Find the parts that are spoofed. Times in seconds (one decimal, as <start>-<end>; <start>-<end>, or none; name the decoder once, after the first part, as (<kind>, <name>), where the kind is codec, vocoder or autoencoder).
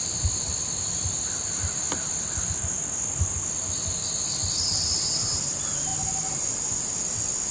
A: none